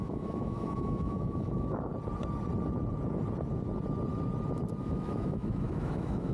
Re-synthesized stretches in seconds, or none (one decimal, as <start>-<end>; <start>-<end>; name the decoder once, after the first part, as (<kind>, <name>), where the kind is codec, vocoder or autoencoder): 0.0-1.9 (autoencoder, DAC-VAE); 4.8-6.3